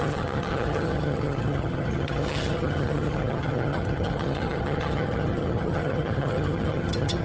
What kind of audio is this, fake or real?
fake